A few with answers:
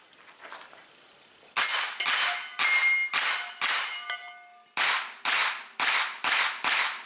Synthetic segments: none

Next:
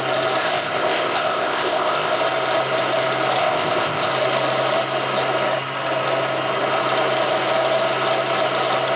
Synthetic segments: 0.4-2.2; 3.4-4.1

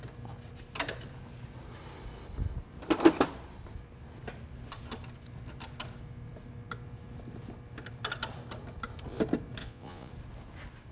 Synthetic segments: 9.6-10.1

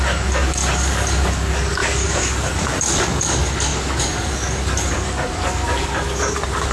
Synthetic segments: 0.0-6.7

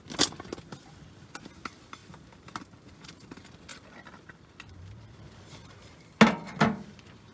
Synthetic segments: 3.7-5.6

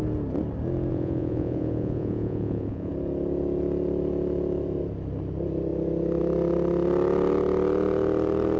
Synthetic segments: 0.9-2.9

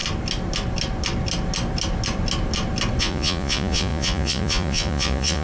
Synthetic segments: 3.0-5.4